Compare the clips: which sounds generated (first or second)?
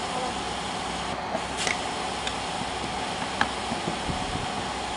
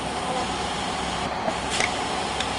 second